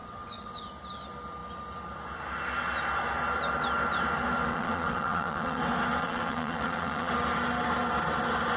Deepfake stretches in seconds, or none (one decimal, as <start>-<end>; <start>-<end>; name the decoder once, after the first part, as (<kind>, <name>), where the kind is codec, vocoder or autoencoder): 0.0-0.7 (vocoder, WaveNeXt); 4.5-5.6; 6.0-7.1